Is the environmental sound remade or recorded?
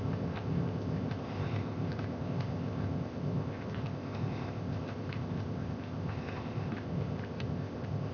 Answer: remade